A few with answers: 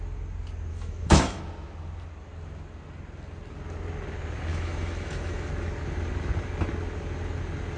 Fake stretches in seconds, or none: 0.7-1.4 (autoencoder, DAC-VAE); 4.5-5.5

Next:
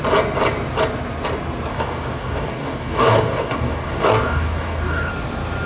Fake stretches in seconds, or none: 1.7-5.1 (codec, DAC)